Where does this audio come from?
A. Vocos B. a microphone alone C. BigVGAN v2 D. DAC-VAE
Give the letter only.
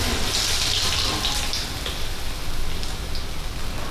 B